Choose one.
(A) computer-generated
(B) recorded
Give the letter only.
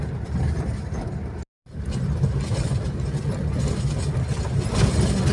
B